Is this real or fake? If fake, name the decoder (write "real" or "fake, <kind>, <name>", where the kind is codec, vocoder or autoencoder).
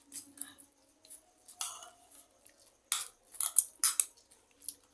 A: real